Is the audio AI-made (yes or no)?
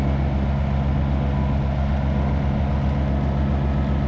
no